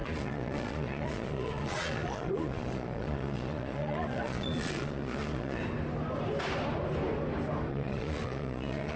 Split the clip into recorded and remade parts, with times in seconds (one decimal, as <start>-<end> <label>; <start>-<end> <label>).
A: 0.0-5.6 remade; 5.6-7.7 recorded; 7.7-9.0 remade